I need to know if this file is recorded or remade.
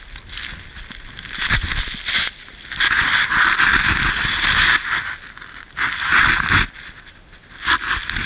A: recorded